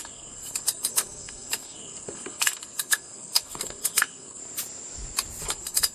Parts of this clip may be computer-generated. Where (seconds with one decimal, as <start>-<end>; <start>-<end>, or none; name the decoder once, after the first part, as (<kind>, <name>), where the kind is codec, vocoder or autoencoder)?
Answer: 0.0-4.4 (codec, SNAC); 5.4-5.9